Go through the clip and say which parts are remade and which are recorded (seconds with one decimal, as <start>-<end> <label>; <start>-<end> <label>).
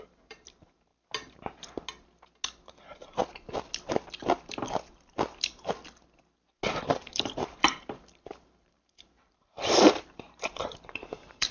0.0-0.9 remade; 0.9-2.8 recorded; 2.8-3.2 remade; 3.2-7.1 recorded; 7.1-11.5 remade